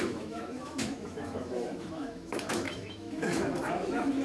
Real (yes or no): no